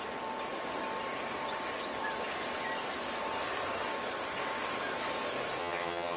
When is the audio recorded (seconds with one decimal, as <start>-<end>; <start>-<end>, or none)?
0.0-5.6